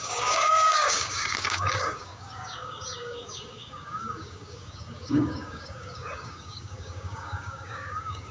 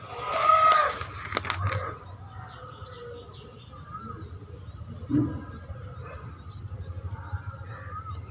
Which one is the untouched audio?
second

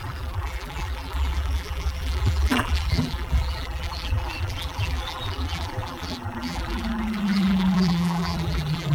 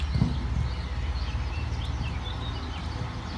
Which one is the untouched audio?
second